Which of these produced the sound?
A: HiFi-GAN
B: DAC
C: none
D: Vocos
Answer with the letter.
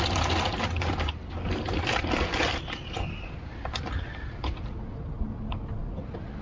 C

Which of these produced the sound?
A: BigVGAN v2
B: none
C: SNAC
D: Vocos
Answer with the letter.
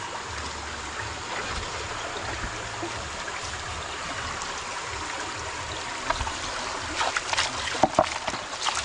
B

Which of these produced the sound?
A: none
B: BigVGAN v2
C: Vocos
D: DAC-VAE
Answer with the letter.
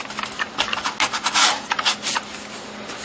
A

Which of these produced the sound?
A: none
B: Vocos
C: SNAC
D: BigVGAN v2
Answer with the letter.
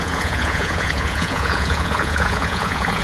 B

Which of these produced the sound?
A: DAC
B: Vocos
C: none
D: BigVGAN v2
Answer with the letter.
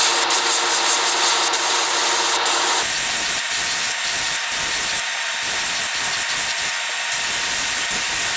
C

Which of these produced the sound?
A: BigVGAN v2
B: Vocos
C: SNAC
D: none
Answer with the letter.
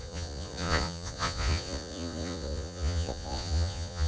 B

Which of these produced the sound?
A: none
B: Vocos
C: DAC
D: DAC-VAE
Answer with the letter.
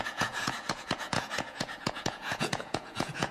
B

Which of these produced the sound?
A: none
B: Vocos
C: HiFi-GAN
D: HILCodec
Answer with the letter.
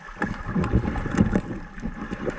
A